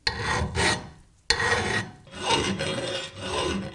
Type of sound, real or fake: real